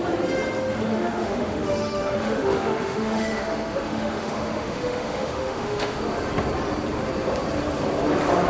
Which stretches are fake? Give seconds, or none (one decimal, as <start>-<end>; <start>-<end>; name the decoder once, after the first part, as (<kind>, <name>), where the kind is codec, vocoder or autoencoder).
0.9-6.0 (autoencoder, DAC-VAE)